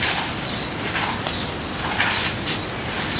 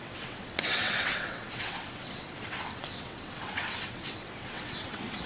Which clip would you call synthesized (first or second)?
second